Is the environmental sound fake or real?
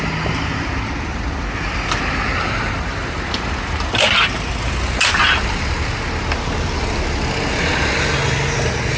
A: real